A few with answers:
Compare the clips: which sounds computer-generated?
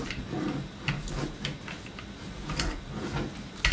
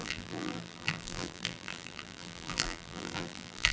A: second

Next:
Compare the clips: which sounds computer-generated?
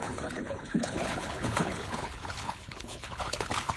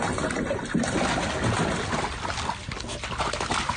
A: first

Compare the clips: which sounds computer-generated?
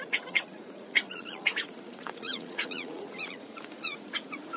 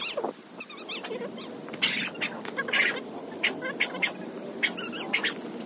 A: first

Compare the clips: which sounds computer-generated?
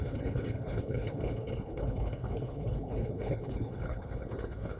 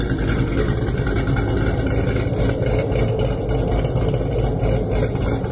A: first